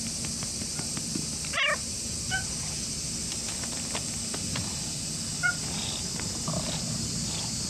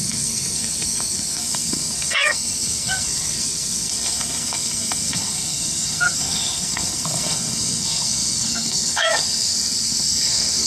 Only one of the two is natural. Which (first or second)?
first